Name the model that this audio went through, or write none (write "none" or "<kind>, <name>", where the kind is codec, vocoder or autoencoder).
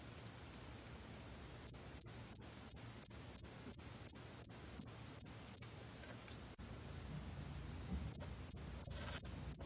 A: none